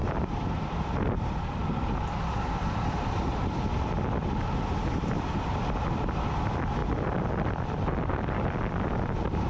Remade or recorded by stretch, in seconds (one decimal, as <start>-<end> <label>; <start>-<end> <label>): 0.0-3.9 remade; 3.9-6.8 recorded; 6.8-9.5 remade